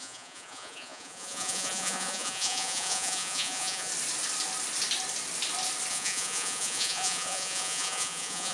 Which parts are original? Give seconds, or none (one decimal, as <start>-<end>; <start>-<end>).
3.9-5.9